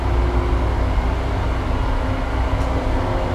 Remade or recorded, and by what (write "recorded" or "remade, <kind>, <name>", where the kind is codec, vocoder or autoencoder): recorded